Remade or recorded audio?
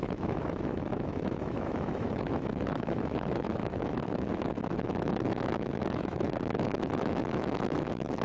remade